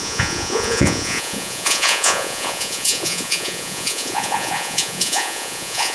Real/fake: fake